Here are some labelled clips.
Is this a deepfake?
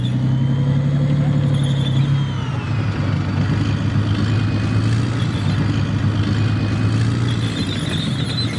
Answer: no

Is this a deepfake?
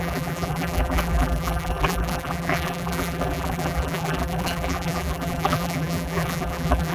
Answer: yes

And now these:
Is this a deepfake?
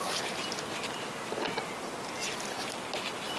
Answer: no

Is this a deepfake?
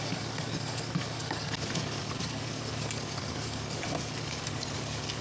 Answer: yes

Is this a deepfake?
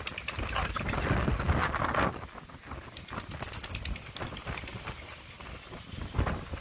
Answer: no